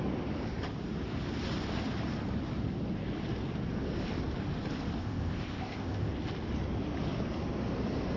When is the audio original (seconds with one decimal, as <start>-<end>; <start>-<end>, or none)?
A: 0.0-5.0; 6.1-8.2